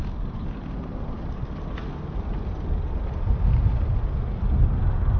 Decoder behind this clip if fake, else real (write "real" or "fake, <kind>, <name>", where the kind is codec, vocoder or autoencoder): real